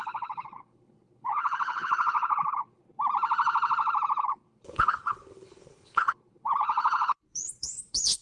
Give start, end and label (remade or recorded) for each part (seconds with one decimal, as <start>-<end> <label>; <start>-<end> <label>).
0.0-2.8 remade; 2.8-4.2 recorded; 4.2-8.2 remade